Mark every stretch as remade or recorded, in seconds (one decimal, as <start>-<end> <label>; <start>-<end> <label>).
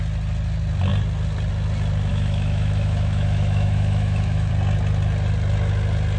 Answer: 0.0-2.1 recorded; 2.1-4.5 remade; 4.5-6.2 recorded